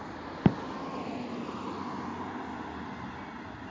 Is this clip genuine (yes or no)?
yes